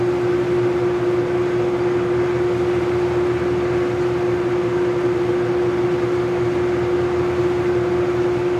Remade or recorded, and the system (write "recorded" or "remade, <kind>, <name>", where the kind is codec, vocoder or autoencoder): recorded